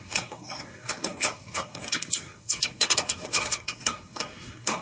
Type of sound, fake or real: fake